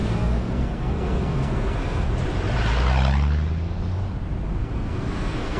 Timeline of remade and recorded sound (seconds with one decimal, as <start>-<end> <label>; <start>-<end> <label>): 0.0-2.1 remade; 2.1-4.6 recorded; 4.6-5.6 remade